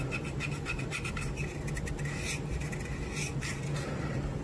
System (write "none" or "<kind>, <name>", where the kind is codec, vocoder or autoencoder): none